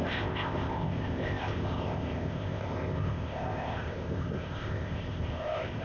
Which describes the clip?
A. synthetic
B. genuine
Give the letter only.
A